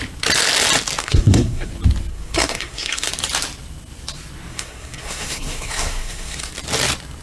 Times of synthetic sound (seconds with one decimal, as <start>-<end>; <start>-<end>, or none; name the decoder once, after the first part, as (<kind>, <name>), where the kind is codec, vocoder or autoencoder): 1.0-1.7 (codec, SNAC); 2.1-3.1; 4.5-6.5